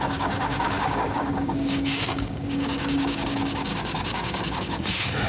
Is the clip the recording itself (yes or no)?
no